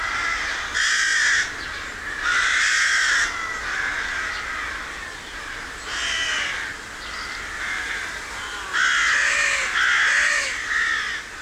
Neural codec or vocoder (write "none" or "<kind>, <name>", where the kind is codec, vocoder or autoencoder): none